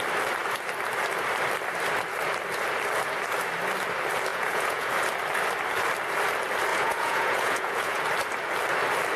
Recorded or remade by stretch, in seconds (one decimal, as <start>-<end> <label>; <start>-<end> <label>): 0.0-4.3 recorded; 4.3-4.9 remade; 4.9-6.7 recorded; 6.7-8.0 remade; 8.0-9.2 recorded